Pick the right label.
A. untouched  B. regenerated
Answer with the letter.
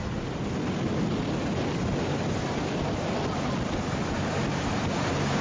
A